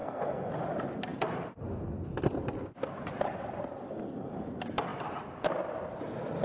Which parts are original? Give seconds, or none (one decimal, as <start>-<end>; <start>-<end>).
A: 0.5-6.4